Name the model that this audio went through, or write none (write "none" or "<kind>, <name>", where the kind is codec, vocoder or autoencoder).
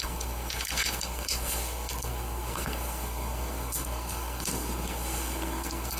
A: codec, SNAC